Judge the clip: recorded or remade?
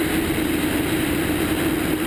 recorded